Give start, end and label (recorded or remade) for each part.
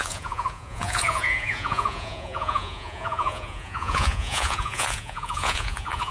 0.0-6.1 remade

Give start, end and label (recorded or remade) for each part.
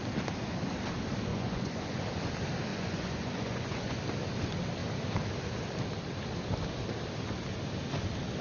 0.0-1.3 recorded; 1.3-2.0 remade; 2.0-2.7 recorded; 2.7-4.0 remade; 4.0-8.4 recorded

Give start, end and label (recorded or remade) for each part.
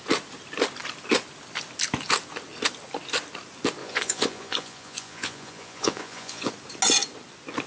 0.0-3.8 recorded; 3.8-6.5 remade; 6.5-7.7 recorded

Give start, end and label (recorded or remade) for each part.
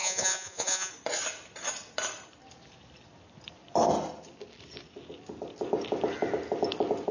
0.0-0.9 remade; 0.9-7.1 recorded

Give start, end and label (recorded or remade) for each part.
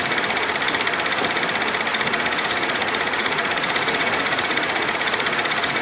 0.0-1.9 recorded; 1.9-5.8 remade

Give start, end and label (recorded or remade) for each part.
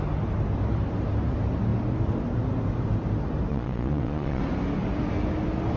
0.0-3.5 recorded; 3.5-4.4 remade; 4.4-5.8 recorded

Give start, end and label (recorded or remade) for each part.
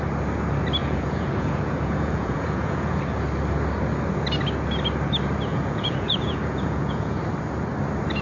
0.0-0.8 recorded; 0.8-3.0 remade; 3.0-5.5 recorded; 5.5-7.2 remade; 7.2-8.2 recorded